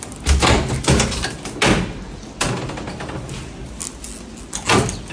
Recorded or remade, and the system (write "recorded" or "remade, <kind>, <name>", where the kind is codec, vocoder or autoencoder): recorded